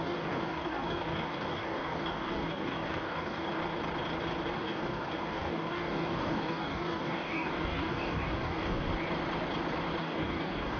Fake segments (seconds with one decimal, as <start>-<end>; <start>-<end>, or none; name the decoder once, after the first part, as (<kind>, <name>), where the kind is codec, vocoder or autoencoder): 0.0-3.6 (codec, DAC); 4.5-8.9; 10.0-10.8